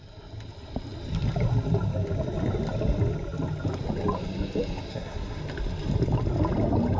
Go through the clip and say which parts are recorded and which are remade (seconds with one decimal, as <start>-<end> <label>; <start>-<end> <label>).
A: 0.0-4.9 recorded; 4.9-5.4 remade; 5.4-7.0 recorded